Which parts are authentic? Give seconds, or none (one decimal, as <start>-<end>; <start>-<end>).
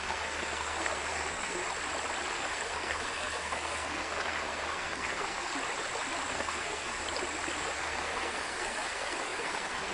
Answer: 1.6-2.3; 5.5-6.3; 7.0-7.6